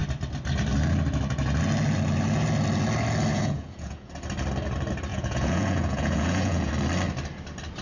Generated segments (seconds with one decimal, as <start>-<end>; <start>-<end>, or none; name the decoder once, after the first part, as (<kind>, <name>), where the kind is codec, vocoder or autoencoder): 3.3-4.1 (vocoder, Vocos); 5.1-6.7